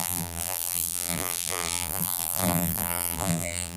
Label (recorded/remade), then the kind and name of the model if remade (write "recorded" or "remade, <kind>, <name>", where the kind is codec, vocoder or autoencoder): remade, vocoder, BigVGAN v2